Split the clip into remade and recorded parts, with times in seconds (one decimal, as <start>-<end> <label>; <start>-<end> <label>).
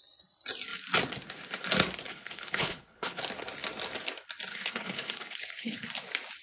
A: 0.0-2.1 recorded; 2.1-3.2 remade; 3.2-4.5 recorded; 4.5-5.9 remade; 5.9-6.4 recorded